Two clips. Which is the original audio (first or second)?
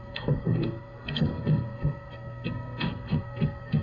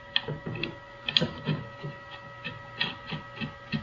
second